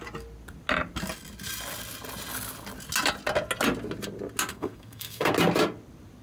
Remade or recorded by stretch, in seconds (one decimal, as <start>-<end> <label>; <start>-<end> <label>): 0.0-4.5 recorded; 4.5-5.3 remade; 5.3-6.2 recorded